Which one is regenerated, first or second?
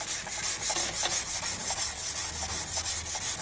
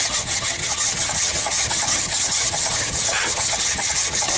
second